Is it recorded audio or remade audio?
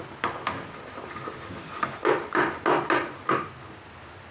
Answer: recorded